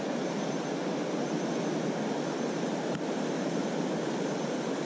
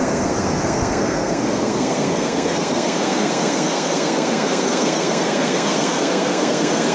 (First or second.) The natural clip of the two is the first